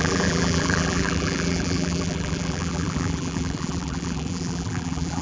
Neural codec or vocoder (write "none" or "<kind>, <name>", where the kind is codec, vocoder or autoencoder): vocoder, BigVGAN v2